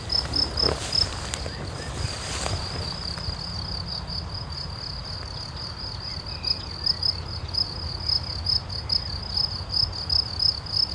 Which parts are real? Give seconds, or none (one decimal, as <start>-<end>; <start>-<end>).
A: 0.0-10.9